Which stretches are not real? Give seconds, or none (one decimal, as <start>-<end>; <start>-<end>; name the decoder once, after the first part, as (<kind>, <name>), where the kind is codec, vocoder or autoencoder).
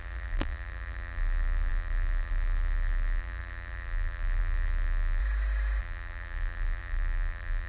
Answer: 0.0-5.2 (vocoder, BigVGAN v2); 5.8-7.7